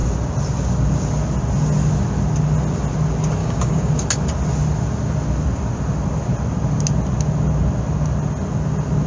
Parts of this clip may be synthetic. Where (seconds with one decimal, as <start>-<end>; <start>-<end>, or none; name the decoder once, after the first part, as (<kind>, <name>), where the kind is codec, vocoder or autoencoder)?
3.4-3.9 (codec, DAC)